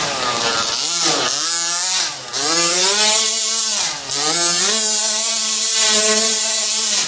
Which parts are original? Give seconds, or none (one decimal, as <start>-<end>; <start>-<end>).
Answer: 0.0-7.1